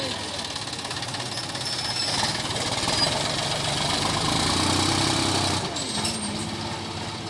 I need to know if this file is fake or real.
real